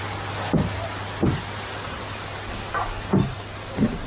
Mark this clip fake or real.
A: real